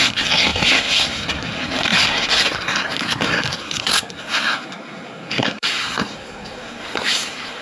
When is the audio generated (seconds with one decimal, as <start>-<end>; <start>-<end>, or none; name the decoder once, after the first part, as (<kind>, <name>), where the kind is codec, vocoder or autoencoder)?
0.0-7.6 (codec, SNAC)